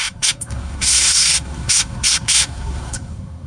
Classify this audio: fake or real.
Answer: fake